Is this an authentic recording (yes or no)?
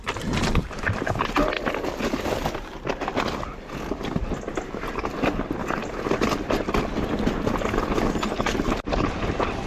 yes